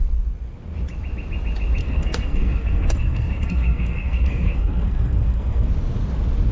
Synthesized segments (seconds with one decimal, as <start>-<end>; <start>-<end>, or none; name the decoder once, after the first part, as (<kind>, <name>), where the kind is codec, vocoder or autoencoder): 1.8-5.7 (codec, SNAC)